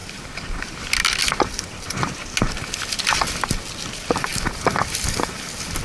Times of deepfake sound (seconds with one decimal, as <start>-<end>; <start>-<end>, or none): none